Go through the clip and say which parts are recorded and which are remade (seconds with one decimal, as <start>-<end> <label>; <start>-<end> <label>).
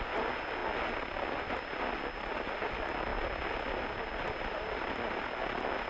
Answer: 0.0-5.9 recorded